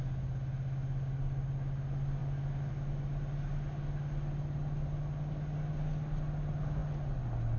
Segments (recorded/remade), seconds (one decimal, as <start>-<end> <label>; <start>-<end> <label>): 0.0-7.6 recorded

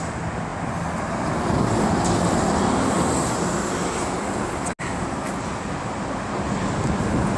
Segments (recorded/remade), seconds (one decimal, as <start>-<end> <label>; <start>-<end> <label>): 0.0-7.4 recorded

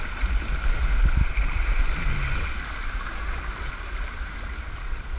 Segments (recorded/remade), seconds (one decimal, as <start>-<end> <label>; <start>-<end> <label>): 0.0-1.2 recorded; 1.2-1.8 remade; 1.8-5.2 recorded